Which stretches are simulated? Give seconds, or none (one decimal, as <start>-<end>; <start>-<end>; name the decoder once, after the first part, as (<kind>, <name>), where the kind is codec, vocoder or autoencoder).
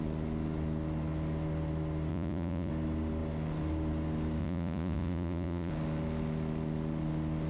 2.1-2.7 (vocoder, Vocos); 4.4-5.7